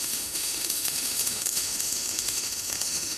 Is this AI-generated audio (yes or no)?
yes